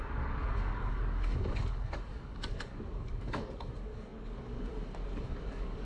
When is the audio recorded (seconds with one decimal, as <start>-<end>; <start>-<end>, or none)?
none